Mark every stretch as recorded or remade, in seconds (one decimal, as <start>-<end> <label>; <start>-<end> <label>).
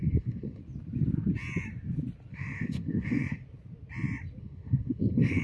0.0-0.6 remade; 0.6-2.3 recorded; 2.3-3.4 remade; 3.4-4.4 recorded; 4.4-5.4 remade